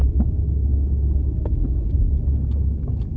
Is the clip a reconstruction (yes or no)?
yes